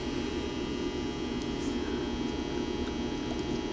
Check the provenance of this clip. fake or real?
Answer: real